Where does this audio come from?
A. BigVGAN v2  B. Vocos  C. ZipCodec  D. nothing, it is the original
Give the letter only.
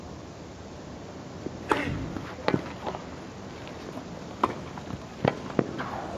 D